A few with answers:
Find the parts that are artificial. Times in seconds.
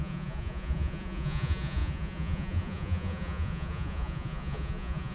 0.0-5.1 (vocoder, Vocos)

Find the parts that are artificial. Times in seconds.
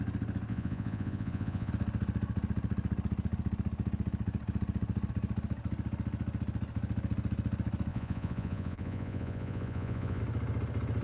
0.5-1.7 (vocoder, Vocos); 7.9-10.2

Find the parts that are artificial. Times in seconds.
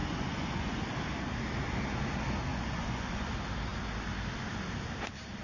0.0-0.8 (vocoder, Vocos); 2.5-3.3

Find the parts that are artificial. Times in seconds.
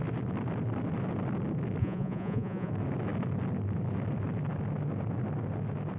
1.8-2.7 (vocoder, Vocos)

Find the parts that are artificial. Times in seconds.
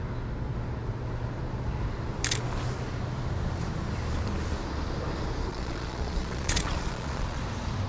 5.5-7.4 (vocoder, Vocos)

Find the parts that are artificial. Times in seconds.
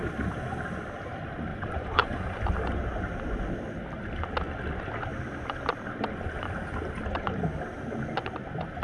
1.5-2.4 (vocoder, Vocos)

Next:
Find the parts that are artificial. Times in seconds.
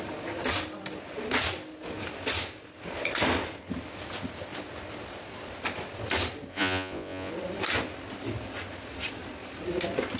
6.5-7.3 (vocoder, Vocos)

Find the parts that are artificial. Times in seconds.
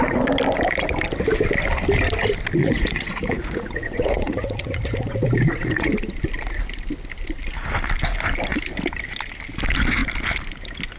2.6-5.9 (vocoder, Vocos)